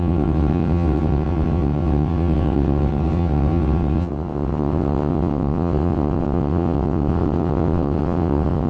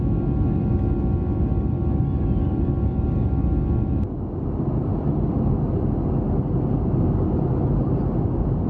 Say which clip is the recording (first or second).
second